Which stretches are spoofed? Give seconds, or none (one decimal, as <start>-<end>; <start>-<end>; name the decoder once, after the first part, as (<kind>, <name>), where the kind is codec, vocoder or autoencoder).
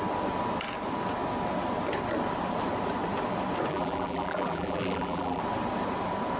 3.7-5.4 (vocoder, BigVGAN v2)